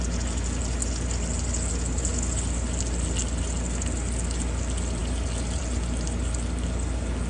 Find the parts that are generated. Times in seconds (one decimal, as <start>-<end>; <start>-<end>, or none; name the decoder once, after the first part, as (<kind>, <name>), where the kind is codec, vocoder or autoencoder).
none